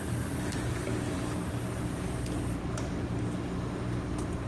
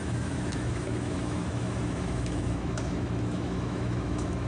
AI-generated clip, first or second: second